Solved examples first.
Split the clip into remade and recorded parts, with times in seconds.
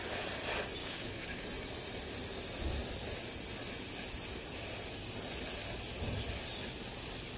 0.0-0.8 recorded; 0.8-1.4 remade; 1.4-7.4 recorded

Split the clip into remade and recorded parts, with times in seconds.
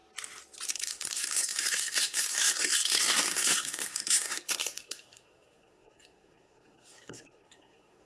0.0-0.7 recorded; 0.7-8.1 remade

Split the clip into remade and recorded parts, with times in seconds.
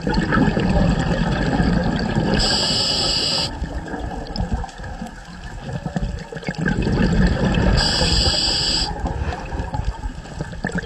0.0-10.9 recorded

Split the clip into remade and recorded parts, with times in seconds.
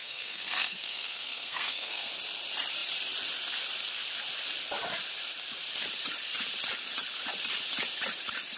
0.0-2.1 remade; 2.1-8.6 recorded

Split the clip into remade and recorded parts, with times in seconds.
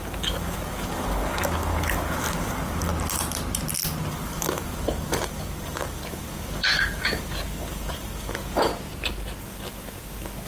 0.0-2.9 remade; 2.9-4.1 recorded; 4.1-8.7 remade; 8.7-9.4 recorded; 9.4-10.5 remade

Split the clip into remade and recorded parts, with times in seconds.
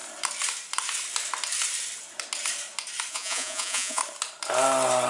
0.0-3.1 recorded; 3.1-4.0 remade; 4.0-5.1 recorded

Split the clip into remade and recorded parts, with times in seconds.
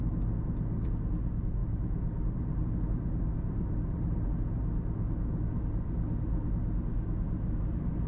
0.0-1.6 recorded; 1.6-4.1 remade; 4.1-8.1 recorded